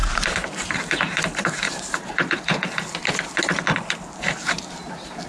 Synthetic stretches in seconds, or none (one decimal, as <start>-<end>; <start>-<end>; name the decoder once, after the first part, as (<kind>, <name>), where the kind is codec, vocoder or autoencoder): 0.0-2.8 (vocoder, BigVGAN v2)